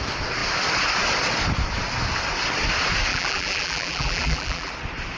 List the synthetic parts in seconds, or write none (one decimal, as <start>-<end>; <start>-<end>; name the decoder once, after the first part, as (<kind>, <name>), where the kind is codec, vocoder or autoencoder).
3.1-4.7 (vocoder, BigVGAN v2)